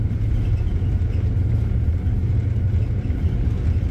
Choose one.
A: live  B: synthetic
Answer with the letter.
A